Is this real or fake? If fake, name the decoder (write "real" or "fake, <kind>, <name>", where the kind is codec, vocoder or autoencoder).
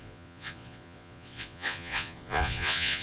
fake, vocoder, Vocos